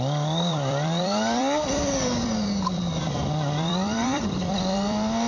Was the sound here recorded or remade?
remade